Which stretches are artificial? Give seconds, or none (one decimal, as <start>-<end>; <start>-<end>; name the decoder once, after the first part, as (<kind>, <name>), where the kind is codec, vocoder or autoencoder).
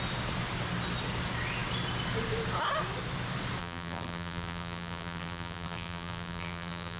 3.6-7.0 (vocoder, BigVGAN v2)